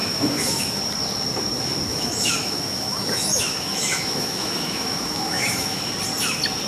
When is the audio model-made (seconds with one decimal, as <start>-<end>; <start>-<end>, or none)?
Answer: 0.0-0.8; 1.9-5.9